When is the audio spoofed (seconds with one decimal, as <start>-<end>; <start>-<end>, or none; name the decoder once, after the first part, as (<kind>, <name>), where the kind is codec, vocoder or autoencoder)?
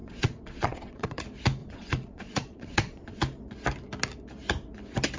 0.0-1.2 (vocoder, Vocos); 1.6-3.2